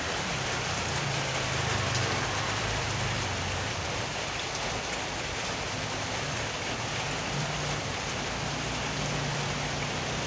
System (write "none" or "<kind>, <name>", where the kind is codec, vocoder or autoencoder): vocoder, BigVGAN v2